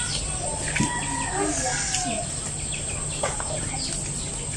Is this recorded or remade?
recorded